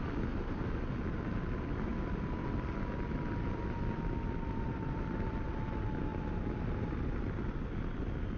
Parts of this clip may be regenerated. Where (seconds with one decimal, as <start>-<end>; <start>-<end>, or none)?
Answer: 1.9-5.5; 6.1-7.6

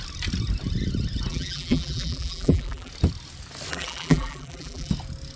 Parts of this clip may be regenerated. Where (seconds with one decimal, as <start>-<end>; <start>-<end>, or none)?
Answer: 1.3-2.9; 3.7-4.9

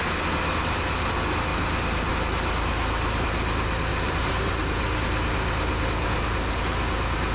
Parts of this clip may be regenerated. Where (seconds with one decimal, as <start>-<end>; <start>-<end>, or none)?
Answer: 3.9-4.5

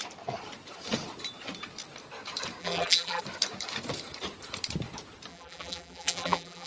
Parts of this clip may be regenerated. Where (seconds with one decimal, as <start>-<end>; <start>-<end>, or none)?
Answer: 2.6-3.2; 5.3-6.7